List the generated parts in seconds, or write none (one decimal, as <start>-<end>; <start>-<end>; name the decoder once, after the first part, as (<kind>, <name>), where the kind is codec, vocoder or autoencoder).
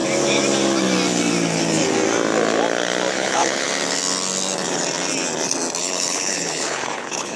3.1-3.7 (codec, HILCodec); 5.8-7.4